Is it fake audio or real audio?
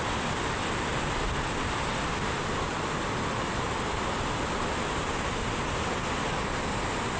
real